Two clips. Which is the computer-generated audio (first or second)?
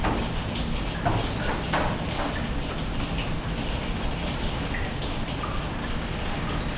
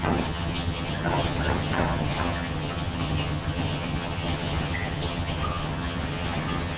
second